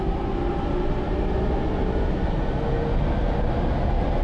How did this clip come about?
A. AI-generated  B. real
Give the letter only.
B